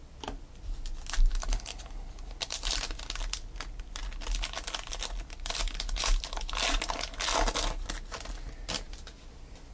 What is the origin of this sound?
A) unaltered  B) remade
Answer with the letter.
A